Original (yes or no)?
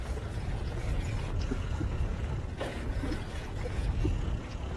no